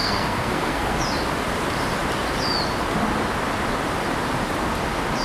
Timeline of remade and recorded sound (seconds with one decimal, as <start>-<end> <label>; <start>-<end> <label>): 0.0-1.0 remade; 1.0-5.2 recorded